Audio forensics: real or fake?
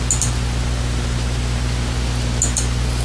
real